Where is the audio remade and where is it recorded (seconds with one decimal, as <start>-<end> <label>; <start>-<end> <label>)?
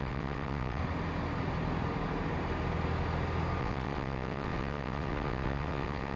0.0-0.8 remade; 0.8-3.6 recorded; 3.6-6.2 remade